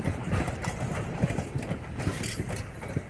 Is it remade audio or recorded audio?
remade